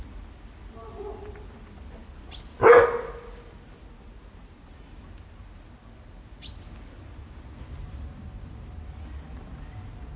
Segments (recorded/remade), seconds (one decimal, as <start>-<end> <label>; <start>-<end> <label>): 0.0-10.2 recorded